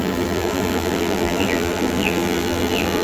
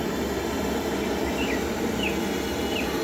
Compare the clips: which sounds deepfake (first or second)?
first